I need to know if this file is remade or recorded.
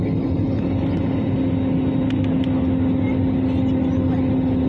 recorded